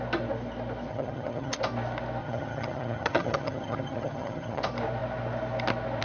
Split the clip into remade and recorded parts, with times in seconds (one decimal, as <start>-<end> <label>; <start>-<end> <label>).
0.0-0.9 recorded; 0.9-1.5 remade; 1.5-2.2 recorded; 2.2-4.6 remade; 4.6-6.0 recorded